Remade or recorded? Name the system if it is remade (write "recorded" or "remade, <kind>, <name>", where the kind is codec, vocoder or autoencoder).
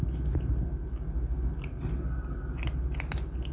recorded